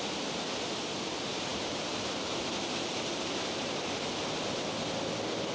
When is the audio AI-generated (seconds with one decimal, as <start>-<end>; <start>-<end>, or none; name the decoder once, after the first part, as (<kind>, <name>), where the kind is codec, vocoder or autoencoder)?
none

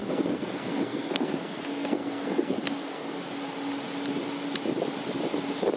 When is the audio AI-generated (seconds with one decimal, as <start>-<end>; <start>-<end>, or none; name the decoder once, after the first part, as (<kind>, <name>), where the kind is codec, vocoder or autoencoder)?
0.0-3.2 (codec, SNAC)

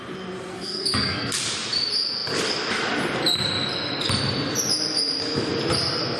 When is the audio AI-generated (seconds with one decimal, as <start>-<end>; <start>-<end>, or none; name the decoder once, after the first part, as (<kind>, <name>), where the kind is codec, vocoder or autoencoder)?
0.5-1.3 (codec, SNAC)